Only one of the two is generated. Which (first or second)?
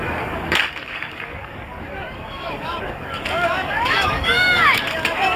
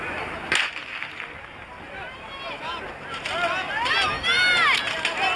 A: first